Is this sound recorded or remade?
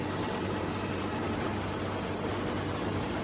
recorded